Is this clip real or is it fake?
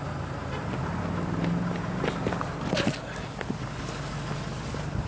real